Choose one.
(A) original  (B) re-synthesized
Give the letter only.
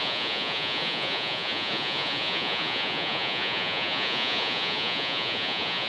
B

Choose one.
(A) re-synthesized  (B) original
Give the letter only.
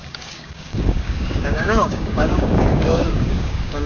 A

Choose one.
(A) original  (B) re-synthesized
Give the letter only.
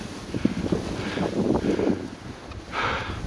A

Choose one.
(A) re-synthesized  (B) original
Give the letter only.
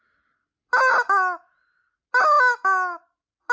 B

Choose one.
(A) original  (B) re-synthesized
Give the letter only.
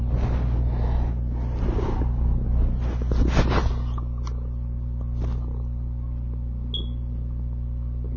A